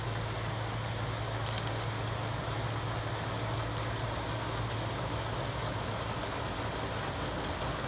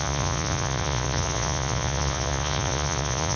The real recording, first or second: first